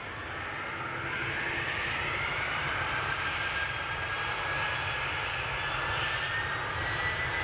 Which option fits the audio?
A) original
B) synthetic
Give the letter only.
A